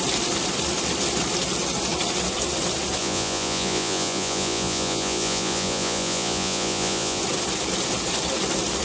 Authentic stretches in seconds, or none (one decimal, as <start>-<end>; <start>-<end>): 0.0-3.0; 7.2-8.8